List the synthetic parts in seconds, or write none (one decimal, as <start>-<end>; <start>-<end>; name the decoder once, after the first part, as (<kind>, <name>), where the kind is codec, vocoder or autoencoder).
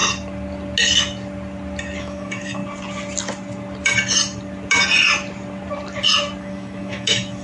2.0-2.6 (autoencoder, DAC-VAE); 6.4-7.4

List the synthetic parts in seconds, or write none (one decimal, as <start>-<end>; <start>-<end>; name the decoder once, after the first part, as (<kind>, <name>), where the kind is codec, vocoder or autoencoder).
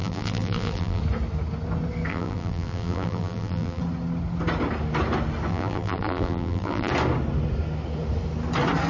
0.0-1.0 (vocoder, BigVGAN v2); 2.1-3.8; 5.5-6.9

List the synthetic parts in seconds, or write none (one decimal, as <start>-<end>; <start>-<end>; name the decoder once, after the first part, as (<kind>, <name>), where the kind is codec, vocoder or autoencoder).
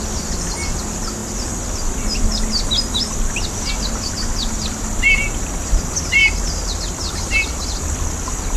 none